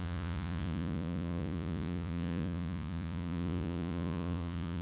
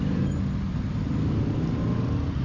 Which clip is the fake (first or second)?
first